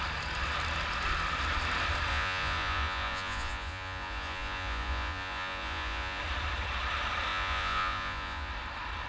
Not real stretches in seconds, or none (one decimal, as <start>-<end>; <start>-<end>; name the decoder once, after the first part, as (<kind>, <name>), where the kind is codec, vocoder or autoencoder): 2.1-6.2 (vocoder, Vocos); 7.3-8.5